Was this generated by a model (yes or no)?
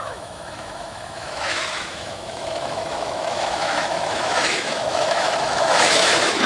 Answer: yes